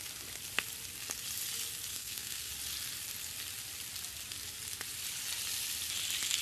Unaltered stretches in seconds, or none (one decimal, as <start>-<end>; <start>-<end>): 0.0-1.9; 2.5-6.4